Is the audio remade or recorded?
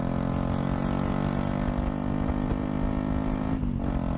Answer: recorded